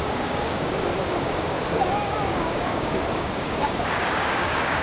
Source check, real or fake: fake